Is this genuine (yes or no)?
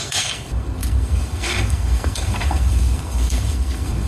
no